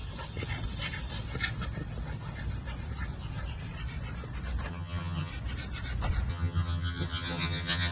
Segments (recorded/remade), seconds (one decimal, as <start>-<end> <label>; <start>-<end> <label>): 0.0-4.7 recorded; 4.7-5.3 remade; 5.3-6.3 recorded; 6.3-7.9 remade